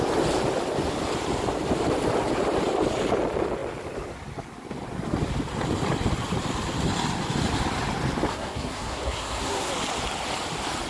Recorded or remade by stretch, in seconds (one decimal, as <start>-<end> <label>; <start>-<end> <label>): 0.0-8.3 recorded; 8.3-9.7 remade; 9.7-10.9 recorded